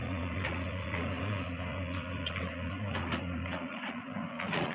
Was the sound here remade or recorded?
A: remade